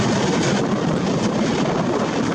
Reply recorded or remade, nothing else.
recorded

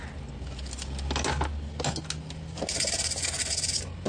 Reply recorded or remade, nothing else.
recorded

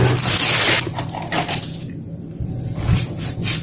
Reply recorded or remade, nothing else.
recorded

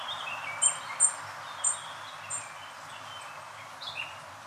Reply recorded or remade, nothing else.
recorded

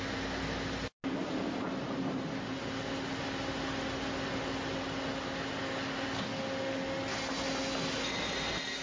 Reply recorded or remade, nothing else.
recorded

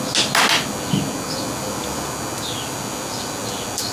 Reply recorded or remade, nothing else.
recorded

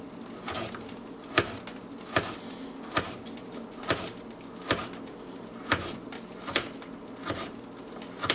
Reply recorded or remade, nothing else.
recorded